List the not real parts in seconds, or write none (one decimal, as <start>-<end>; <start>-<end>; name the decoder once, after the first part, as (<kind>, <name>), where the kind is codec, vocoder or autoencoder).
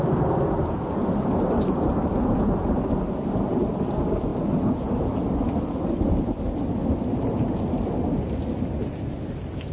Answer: none